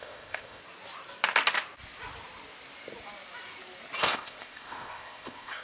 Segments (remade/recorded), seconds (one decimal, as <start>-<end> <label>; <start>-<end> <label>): 0.0-0.6 remade; 0.6-4.0 recorded; 4.0-5.6 remade